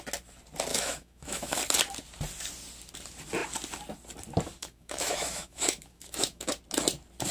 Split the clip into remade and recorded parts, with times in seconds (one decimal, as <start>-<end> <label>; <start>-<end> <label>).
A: 0.0-0.7 recorded; 0.7-1.6 remade; 1.6-4.6 recorded; 4.6-6.5 remade; 6.5-7.3 recorded